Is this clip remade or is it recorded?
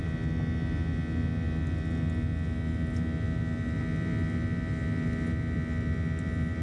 recorded